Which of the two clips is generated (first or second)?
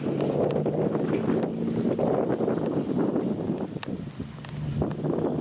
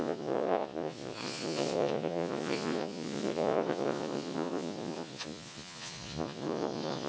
second